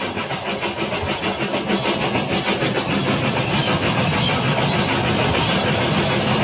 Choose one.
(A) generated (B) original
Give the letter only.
B